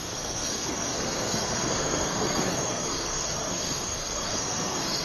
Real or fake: fake